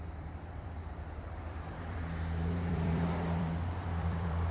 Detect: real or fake fake